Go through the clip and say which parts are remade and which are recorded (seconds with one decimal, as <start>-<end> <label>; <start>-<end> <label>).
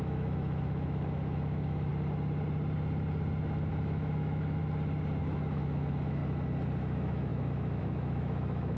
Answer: 0.0-1.9 remade; 1.9-3.7 recorded; 3.7-4.6 remade; 4.6-5.2 recorded; 5.2-6.2 remade; 6.2-6.8 recorded; 6.8-8.8 remade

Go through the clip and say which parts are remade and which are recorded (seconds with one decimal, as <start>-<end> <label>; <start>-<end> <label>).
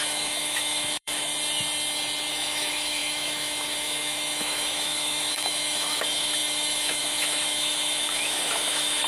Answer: 0.0-1.3 remade; 1.3-2.3 recorded; 2.3-9.1 remade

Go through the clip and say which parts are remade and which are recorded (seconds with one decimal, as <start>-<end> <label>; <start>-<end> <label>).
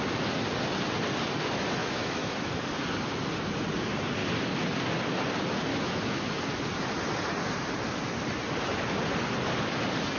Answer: 0.0-1.8 recorded; 1.8-2.5 remade; 2.5-5.7 recorded; 5.7-6.4 remade; 6.4-10.2 recorded